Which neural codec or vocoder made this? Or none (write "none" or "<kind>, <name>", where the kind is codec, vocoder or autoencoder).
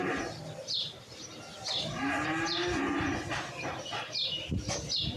none